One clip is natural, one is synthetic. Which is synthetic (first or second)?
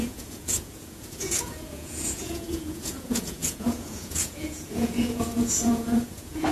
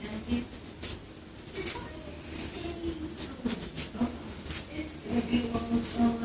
first